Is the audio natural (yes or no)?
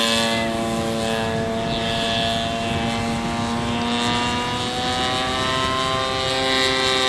yes